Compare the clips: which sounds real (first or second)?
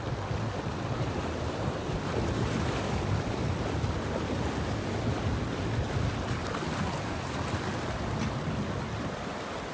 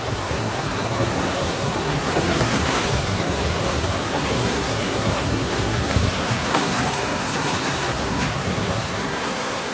first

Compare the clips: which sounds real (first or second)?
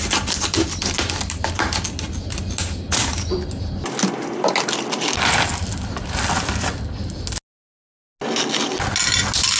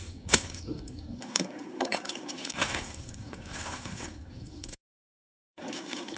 first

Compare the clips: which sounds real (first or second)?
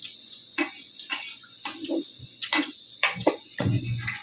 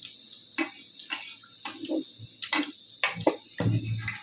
second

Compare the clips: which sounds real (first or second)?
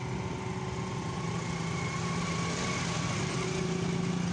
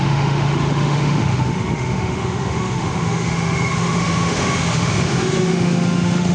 first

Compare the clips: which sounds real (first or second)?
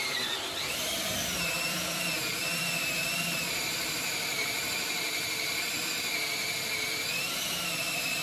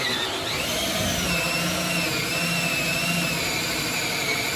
second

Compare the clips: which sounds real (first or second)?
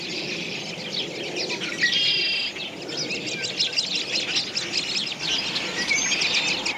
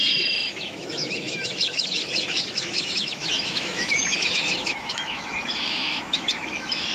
first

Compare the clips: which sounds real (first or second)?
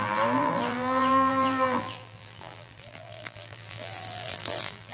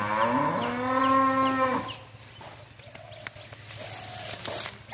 second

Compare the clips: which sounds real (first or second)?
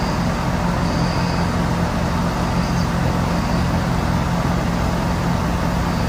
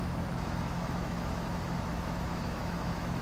first